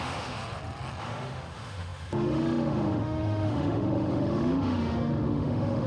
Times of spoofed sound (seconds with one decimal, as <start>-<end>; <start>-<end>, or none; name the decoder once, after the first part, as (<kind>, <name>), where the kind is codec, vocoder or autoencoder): 0.0-0.4 (autoencoder, DAC-VAE); 1.0-5.9